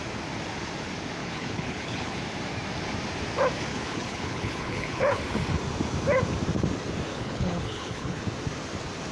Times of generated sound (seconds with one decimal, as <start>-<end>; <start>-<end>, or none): 1.2-2.2; 3.7-5.2; 7.1-8.2